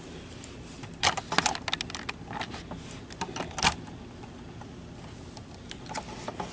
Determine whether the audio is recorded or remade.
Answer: recorded